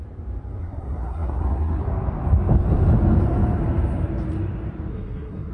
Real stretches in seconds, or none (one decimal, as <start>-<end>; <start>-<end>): 0.0-0.6; 1.8-4.9